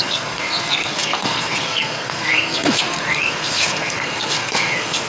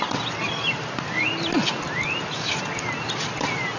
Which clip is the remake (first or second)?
first